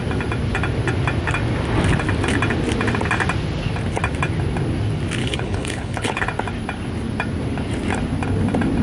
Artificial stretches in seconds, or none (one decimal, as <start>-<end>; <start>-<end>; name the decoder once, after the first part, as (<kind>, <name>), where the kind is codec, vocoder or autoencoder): 5.2-6.2 (codec, HILCodec)